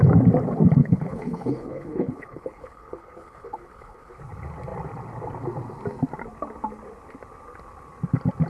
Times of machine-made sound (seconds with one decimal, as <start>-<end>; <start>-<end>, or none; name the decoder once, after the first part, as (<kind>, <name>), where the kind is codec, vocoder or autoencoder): 0.8-4.2 (codec, HILCodec)

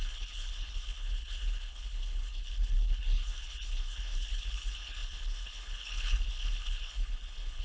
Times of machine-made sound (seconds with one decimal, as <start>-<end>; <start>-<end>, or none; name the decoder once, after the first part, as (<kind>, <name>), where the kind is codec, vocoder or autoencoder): 0.0-7.6 (codec, HILCodec)

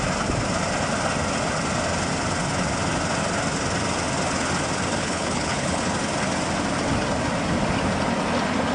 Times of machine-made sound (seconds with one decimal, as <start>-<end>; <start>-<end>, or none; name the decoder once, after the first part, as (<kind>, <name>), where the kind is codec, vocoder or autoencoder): 5.0-5.8 (codec, HILCodec)